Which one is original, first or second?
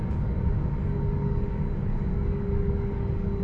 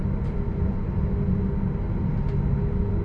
second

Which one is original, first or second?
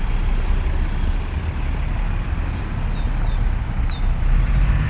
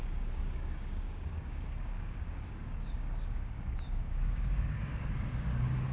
first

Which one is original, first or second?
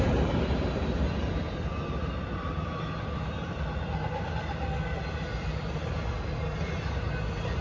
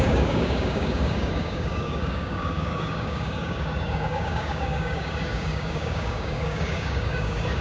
first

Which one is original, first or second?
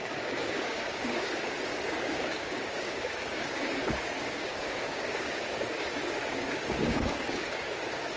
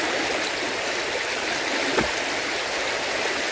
second